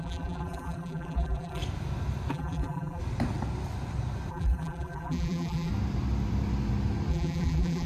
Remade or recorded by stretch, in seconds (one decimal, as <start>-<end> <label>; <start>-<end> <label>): 0.0-1.6 remade; 1.6-2.3 recorded; 2.3-3.0 remade; 3.0-4.3 recorded; 4.3-5.7 remade; 5.7-7.1 recorded; 7.1-7.9 remade